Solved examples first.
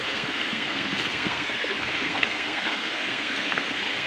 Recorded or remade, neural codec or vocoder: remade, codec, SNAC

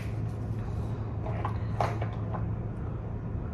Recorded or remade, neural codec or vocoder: recorded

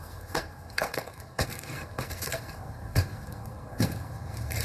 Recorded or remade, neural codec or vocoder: remade, codec, SNAC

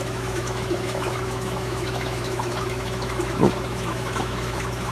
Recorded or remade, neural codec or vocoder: remade, autoencoder, DAC-VAE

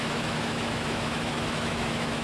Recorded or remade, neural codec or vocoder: remade, autoencoder, DAC-VAE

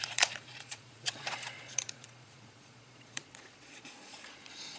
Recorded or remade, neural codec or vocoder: remade, vocoder, Vocos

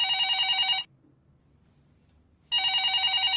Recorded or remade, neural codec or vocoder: recorded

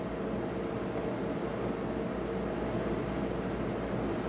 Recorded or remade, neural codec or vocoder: recorded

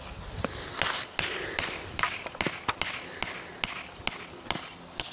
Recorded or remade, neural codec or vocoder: recorded